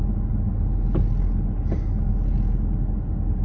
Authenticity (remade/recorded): recorded